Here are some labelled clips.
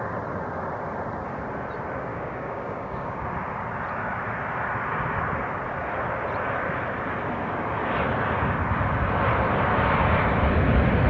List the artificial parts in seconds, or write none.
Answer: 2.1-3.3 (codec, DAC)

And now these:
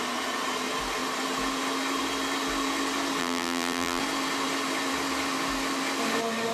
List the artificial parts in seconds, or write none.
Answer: 3.2-4.0 (vocoder, BigVGAN v2)

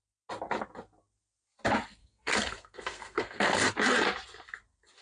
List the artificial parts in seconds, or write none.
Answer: 2.0-3.7 (codec, SNAC)

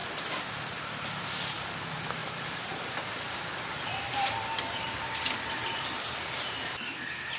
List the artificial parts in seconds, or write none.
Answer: 0.0-0.7 (vocoder, BigVGAN v2); 2.2-4.9

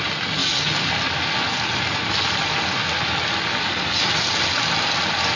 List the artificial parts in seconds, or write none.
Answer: none

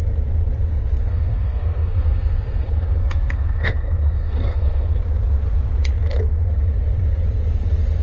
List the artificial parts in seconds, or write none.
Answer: 1.1-5.0 (codec, SNAC)

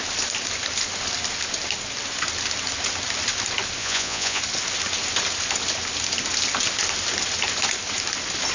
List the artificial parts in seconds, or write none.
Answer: 3.8-4.4 (vocoder, Vocos)

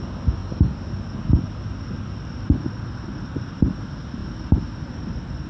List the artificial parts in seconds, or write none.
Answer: none